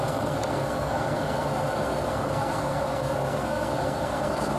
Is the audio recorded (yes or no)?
no